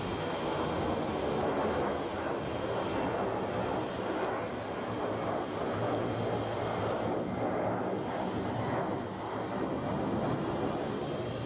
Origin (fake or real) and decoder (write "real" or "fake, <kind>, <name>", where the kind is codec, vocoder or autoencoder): real